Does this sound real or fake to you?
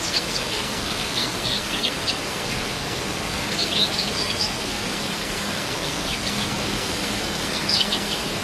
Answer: fake